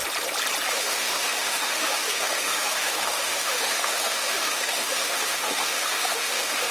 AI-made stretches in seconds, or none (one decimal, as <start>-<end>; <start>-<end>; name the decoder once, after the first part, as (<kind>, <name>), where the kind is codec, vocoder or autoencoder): 0.7-6.7 (autoencoder, DAC-VAE)